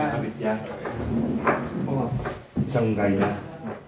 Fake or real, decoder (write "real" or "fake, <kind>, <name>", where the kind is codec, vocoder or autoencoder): real